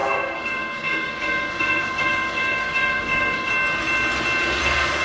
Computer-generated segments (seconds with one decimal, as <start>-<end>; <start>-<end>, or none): 0.0-3.5; 4.6-5.0